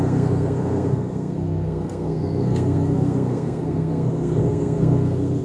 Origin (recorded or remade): remade